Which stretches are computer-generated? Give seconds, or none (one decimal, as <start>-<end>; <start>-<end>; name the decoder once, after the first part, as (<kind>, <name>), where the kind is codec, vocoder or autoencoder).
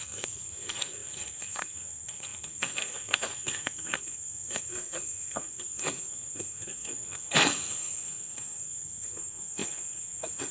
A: 0.0-10.5 (codec, SNAC)